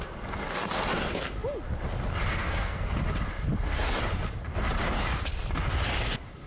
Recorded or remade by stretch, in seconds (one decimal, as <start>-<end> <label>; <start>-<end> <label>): 0.0-2.3 recorded; 2.3-2.9 remade; 2.9-6.5 recorded